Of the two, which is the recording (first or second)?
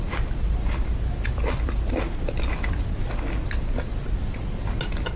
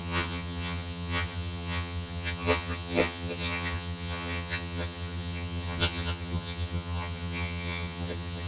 first